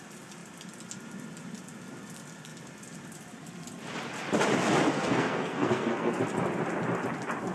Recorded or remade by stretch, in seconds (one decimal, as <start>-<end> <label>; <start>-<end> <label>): 0.0-4.9 recorded; 4.9-6.2 remade; 6.2-7.5 recorded